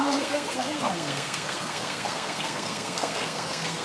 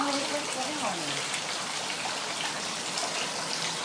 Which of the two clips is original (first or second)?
second